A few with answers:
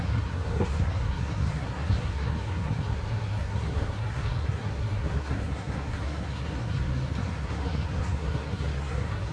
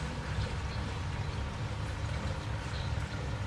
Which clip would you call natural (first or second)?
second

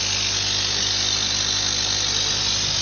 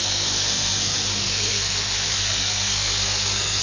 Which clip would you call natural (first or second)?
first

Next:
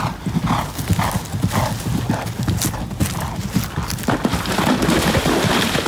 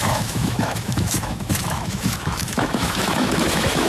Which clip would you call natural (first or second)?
first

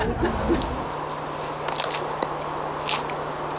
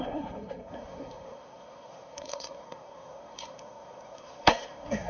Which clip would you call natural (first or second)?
first